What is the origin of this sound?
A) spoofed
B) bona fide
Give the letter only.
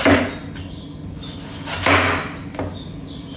B